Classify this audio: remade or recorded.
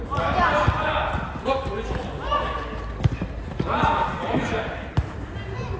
recorded